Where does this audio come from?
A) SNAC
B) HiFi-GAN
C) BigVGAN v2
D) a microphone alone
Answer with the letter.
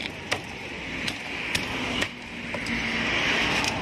D